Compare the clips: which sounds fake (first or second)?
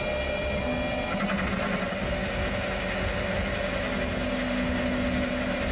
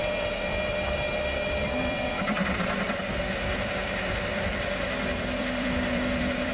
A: second